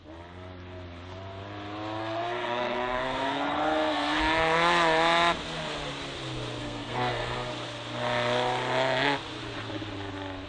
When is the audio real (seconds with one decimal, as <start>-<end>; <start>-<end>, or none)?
0.0-2.0; 4.2-6.6; 7.5-10.5